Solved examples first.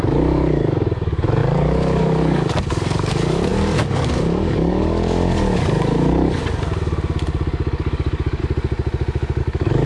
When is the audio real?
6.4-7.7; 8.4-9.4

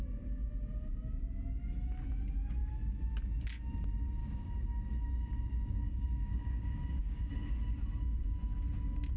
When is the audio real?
0.0-4.2; 7.3-9.2

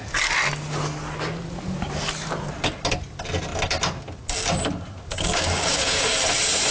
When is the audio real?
0.0-5.1; 6.0-6.7

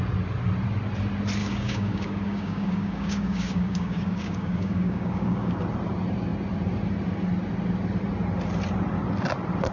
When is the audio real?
0.0-1.4; 5.6-9.7

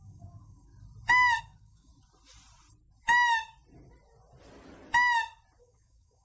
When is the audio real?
0.7-1.4; 1.9-5.6